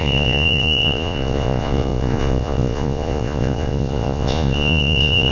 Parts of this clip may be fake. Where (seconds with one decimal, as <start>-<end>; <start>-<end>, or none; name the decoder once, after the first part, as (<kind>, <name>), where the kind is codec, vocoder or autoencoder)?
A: 0.0-5.3 (vocoder, Vocos)